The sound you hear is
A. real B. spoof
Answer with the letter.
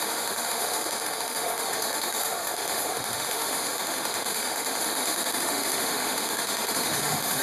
B